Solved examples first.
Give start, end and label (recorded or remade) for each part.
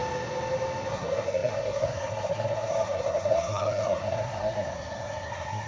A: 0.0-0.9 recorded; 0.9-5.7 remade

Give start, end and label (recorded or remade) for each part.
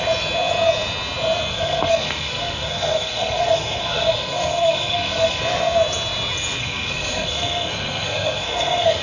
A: 0.0-1.5 recorded; 1.5-5.4 remade; 5.4-6.6 recorded; 6.6-9.0 remade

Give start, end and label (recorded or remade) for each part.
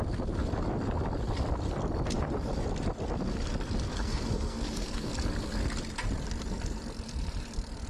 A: 0.0-3.9 recorded; 3.9-5.1 remade; 5.1-7.9 recorded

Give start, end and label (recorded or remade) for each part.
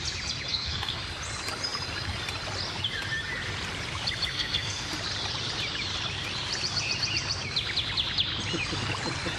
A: 0.0-0.5 recorded; 0.5-1.0 remade; 1.0-4.3 recorded; 4.3-4.9 remade; 4.9-9.4 recorded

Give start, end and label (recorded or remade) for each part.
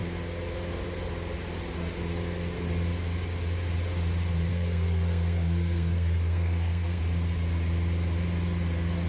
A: 0.0-4.5 recorded; 4.5-7.0 remade; 7.0-9.1 recorded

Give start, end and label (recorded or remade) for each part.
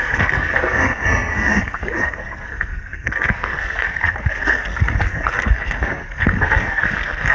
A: 0.0-7.3 remade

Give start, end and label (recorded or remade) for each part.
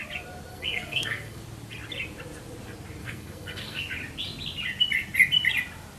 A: 0.0-0.5 recorded; 0.5-1.4 remade; 1.4-3.0 recorded; 3.0-3.9 remade; 3.9-6.0 recorded